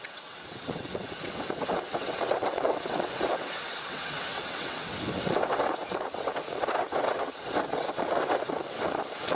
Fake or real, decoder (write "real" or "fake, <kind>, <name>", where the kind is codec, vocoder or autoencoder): fake, vocoder, WaveNeXt